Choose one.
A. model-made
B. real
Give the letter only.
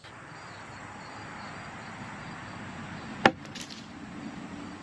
B